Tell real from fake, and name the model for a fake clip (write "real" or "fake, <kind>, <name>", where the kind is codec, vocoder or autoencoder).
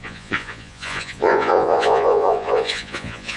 fake, vocoder, Vocos